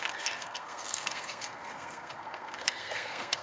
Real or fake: fake